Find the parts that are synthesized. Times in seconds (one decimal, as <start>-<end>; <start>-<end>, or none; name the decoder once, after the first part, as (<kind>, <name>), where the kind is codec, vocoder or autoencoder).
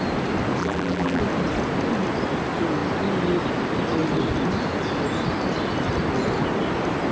0.6-1.2 (vocoder, BigVGAN v2)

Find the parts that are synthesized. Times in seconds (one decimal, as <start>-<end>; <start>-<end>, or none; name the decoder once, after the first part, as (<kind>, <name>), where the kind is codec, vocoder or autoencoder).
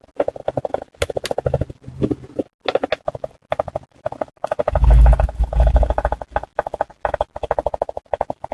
none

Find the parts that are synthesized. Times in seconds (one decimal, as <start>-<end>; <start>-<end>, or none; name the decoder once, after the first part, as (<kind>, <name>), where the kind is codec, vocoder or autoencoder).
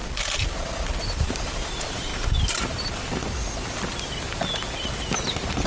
1.0-2.1 (vocoder, BigVGAN v2)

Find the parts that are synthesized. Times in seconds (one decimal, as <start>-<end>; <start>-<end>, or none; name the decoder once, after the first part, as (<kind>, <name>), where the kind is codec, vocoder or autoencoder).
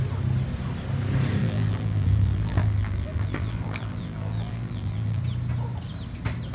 1.4-5.2 (vocoder, BigVGAN v2)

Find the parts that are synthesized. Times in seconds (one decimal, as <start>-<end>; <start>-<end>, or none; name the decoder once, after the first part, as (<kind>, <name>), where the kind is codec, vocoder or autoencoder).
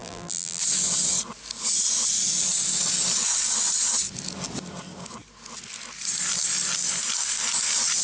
0.0-0.6 (vocoder, BigVGAN v2)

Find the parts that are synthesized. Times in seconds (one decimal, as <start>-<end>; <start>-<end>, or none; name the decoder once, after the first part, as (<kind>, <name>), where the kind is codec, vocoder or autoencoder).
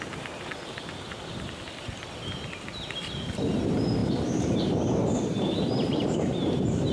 4.0-6.9 (vocoder, BigVGAN v2)